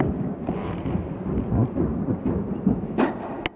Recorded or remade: recorded